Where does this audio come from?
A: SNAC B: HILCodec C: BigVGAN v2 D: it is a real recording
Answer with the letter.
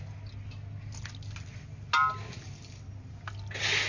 D